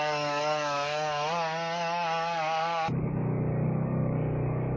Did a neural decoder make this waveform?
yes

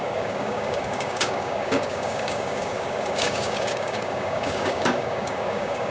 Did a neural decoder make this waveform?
yes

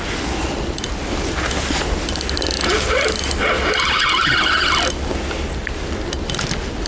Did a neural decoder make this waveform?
no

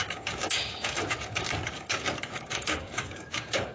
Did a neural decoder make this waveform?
yes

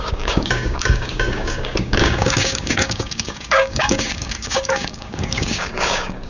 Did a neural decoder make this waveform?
yes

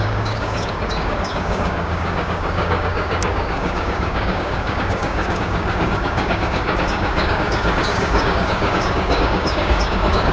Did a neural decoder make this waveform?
yes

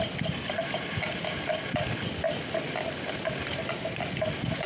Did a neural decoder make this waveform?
no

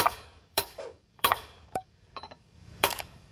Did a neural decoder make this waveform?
yes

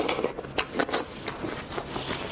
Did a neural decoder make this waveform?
no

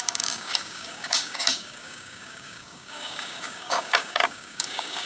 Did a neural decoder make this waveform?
yes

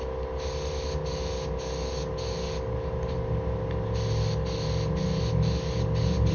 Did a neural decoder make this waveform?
no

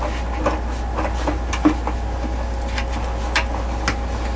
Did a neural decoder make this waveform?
no